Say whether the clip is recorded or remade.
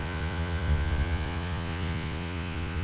remade